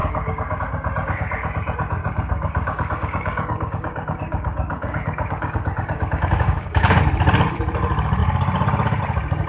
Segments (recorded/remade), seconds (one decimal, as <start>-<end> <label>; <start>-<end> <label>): 0.0-0.6 remade; 0.6-2.0 recorded; 2.0-7.0 remade; 7.0-9.5 recorded